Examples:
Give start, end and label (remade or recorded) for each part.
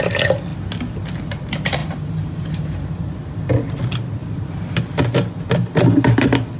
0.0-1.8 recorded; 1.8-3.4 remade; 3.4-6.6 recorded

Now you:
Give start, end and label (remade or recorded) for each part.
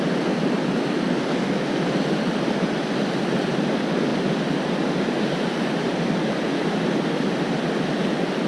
0.0-8.5 recorded